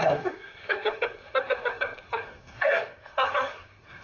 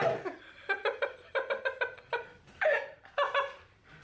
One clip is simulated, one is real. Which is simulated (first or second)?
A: first